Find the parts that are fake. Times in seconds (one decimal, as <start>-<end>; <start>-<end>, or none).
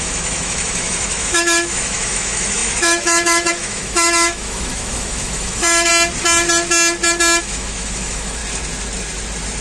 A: 0.0-5.9; 7.4-8.4